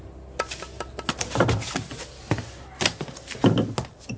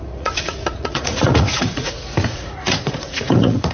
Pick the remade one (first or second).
second